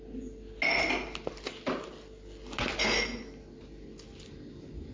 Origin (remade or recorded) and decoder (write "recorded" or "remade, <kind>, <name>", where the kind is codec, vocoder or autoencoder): recorded